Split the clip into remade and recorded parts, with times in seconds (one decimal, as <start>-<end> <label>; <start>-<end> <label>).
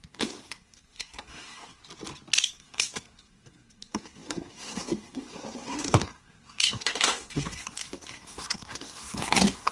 0.0-1.8 remade; 1.8-2.4 recorded; 2.4-9.7 remade